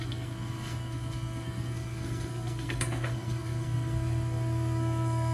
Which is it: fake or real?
fake